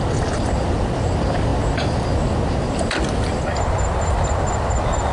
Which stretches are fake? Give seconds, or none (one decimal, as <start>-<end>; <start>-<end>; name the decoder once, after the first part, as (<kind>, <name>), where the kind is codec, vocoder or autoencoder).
0.0-1.5 (vocoder, BigVGAN v2); 2.6-5.1